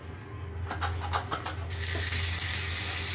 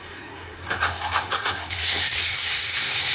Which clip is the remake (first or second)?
second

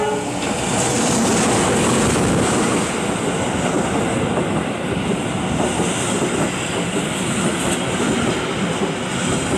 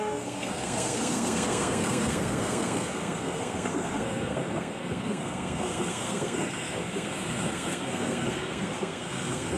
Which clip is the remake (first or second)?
second